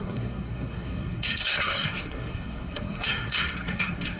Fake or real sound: fake